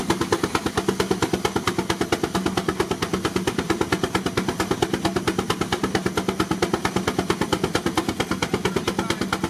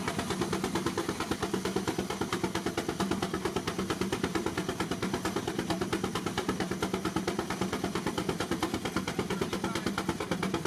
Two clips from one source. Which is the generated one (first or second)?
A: second